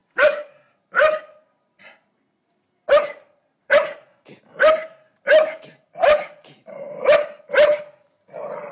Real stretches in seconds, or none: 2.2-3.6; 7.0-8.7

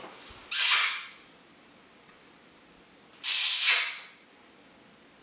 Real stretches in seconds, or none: 0.0-0.4; 3.5-5.2

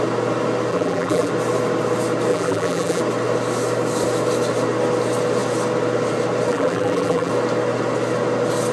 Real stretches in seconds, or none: 0.0-0.7; 1.3-2.3; 3.0-6.5; 7.3-8.7

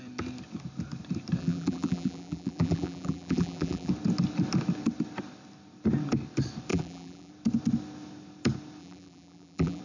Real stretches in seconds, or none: 0.0-1.4; 3.9-6.7; 7.3-8.8

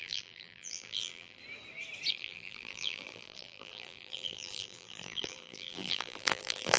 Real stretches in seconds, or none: 1.4-2.1

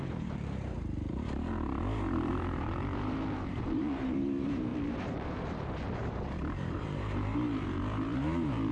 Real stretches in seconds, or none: 4.7-6.0

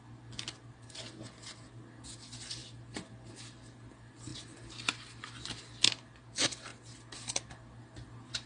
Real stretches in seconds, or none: 0.0-8.5